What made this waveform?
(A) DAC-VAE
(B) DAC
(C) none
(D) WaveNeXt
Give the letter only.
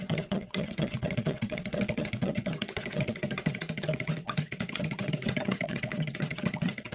D